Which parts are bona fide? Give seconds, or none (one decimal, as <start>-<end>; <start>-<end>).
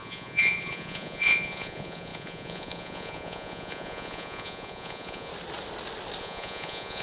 5.3-6.2